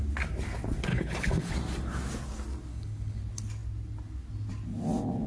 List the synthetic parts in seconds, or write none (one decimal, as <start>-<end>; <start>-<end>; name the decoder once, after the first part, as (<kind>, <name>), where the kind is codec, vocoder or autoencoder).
0.9-1.5 (codec, HILCodec); 2.7-3.2